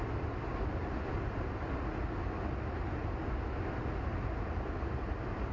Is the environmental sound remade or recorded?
recorded